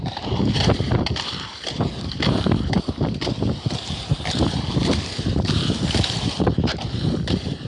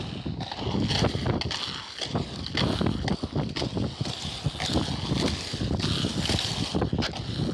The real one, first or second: second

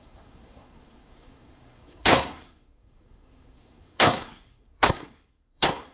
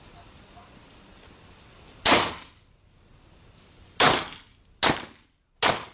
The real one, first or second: second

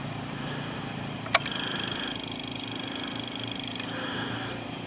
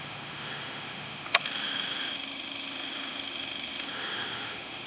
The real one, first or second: first